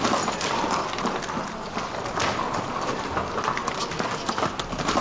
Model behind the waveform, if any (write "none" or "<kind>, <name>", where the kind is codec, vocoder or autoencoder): none